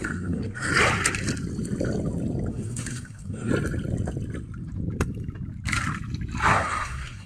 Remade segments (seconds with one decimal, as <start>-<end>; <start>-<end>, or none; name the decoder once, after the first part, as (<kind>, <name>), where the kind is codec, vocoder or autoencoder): 0.0-0.7 (codec, SNAC); 2.5-3.5; 6.5-7.3